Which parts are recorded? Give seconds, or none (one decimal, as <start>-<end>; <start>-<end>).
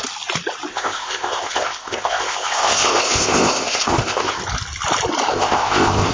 0.0-0.7; 4.4-5.3